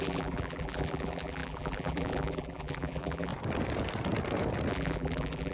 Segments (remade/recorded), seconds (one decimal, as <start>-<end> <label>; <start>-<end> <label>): 0.0-3.3 remade; 3.3-4.7 recorded; 4.7-5.5 remade